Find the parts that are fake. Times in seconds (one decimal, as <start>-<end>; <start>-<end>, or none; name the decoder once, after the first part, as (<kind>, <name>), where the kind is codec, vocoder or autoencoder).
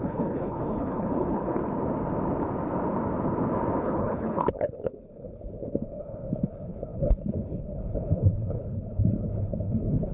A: 0.0-1.6 (codec, HILCodec); 3.8-10.1